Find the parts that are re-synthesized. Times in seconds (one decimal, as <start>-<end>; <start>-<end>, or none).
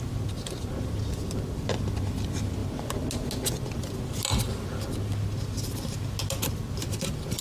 none